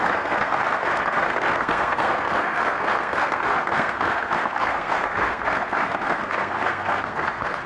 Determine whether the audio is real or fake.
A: fake